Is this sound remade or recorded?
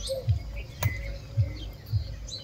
recorded